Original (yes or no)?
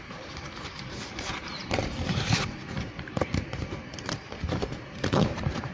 no